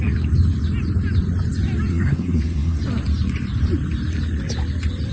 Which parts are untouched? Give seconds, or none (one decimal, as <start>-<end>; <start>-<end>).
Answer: 0.0-1.9; 2.8-5.1